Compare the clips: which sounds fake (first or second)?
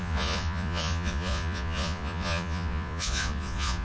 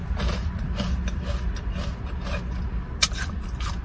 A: first